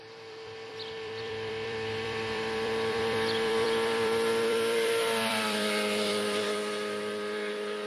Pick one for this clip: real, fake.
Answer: fake